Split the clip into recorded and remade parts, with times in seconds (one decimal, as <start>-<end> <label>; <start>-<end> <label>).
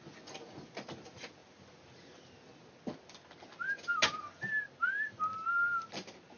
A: 0.0-6.4 recorded